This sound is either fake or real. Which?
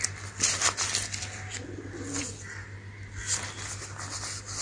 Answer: real